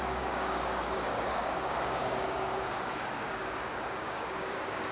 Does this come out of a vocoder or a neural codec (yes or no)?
yes